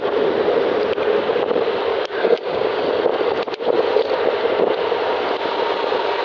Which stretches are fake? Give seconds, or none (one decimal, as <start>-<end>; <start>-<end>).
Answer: 1.9-2.8